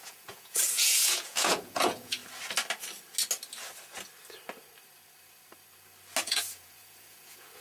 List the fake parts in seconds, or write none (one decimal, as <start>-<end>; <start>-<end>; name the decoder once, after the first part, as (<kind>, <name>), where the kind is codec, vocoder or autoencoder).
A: 0.0-2.2 (vocoder, Vocos); 6.2-7.6